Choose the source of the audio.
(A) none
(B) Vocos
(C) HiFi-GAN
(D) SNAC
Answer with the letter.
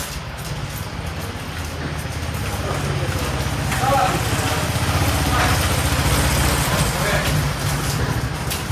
A